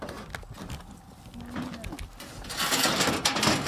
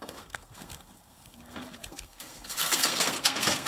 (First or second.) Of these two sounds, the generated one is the second